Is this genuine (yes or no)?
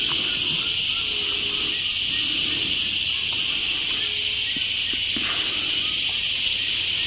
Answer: yes